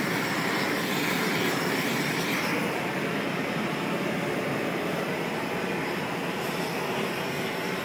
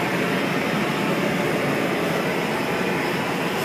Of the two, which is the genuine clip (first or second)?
second